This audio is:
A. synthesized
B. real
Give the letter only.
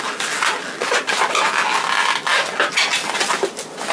B